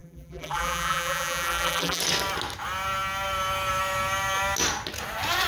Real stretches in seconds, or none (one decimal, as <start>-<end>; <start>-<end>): 2.0-5.5